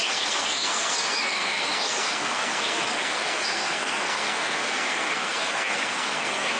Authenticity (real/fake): fake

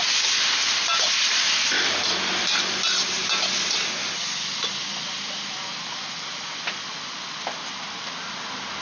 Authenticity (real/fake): real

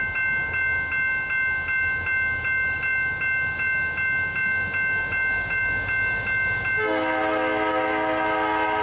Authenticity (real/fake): real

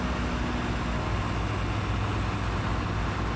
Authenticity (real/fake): real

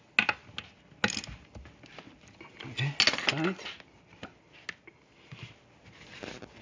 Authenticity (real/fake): real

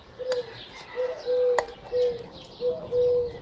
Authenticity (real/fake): real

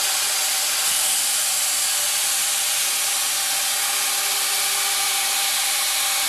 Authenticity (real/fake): real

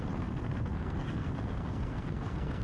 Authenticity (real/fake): fake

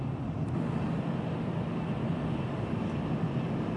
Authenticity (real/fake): real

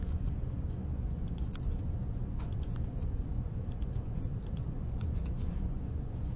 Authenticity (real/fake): fake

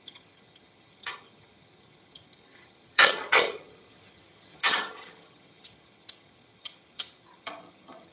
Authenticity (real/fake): fake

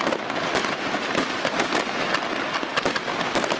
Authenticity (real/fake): real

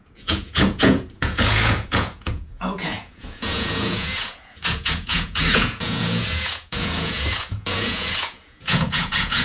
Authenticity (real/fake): fake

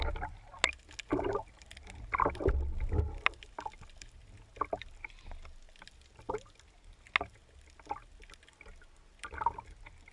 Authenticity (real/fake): real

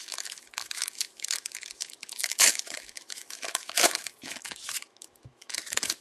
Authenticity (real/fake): fake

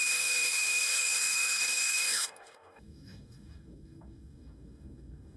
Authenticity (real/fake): fake